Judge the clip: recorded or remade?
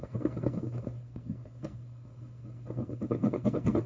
remade